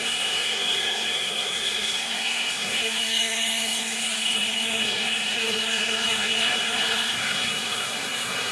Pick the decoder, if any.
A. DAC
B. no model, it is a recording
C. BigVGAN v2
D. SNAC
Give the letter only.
D